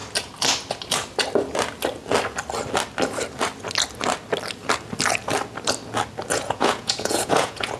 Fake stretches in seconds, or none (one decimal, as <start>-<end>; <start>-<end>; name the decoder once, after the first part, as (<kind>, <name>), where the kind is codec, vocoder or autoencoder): 6.3-7.8 (vocoder, Vocos)

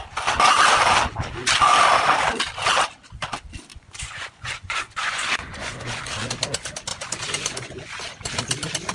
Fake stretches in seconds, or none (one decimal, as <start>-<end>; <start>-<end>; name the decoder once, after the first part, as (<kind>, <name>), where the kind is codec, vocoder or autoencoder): 3.7-6.1 (vocoder, Vocos); 6.9-8.0

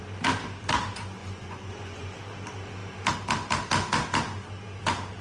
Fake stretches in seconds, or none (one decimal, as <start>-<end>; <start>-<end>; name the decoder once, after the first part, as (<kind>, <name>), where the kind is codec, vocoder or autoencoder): 1.2-2.2 (vocoder, Vocos)

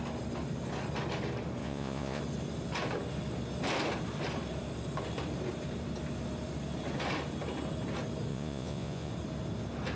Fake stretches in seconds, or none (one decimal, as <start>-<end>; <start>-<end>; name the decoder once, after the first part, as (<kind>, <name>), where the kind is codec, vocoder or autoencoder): 1.6-2.2 (vocoder, Vocos); 8.3-9.1